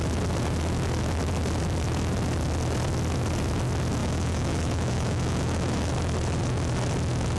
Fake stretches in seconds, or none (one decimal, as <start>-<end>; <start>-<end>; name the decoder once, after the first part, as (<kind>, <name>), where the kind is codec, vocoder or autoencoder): 4.0-5.9 (autoencoder, DAC-VAE)